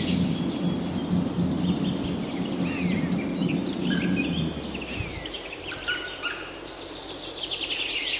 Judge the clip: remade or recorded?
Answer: recorded